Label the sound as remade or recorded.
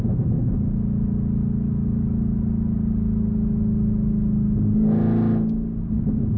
recorded